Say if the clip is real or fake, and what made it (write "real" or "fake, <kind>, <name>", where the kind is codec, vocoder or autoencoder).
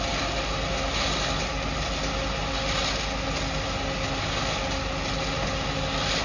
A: real